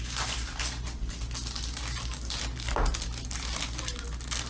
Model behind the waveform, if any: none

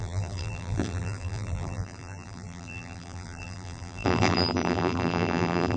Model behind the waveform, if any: vocoder, BigVGAN v2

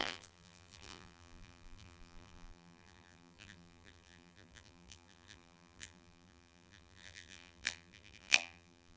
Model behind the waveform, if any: vocoder, BigVGAN v2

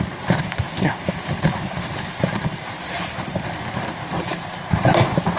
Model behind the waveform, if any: vocoder, BigVGAN v2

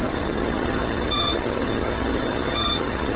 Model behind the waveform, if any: vocoder, HiFi-GAN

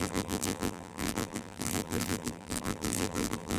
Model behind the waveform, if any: vocoder, BigVGAN v2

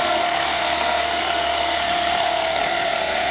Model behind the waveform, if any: codec, SNAC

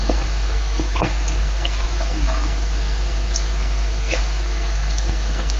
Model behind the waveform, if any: codec, SNAC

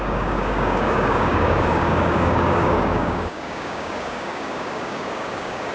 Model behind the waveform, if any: codec, DAC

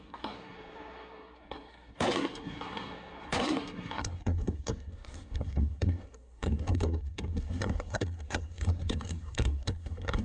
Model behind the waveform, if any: codec, SNAC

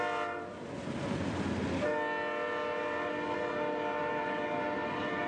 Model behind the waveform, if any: none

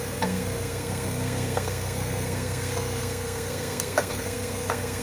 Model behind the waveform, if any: codec, SNAC